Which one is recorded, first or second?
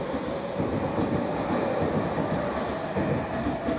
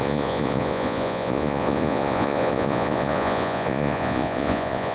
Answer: first